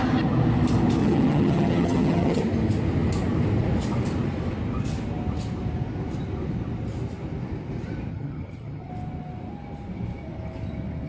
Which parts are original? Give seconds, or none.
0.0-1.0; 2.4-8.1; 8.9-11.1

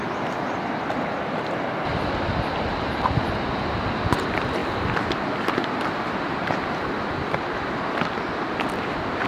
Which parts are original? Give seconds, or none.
0.0-1.9; 3.2-7.2; 7.9-9.3